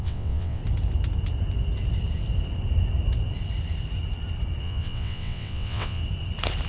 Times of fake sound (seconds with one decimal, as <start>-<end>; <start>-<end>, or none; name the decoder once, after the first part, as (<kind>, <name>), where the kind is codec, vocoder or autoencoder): 0.0-0.6 (vocoder, WaveNeXt); 4.6-6.0